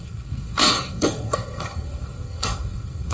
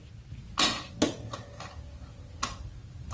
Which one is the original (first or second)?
second